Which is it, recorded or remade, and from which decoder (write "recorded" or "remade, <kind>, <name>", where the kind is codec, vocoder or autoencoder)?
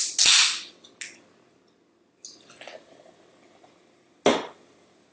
recorded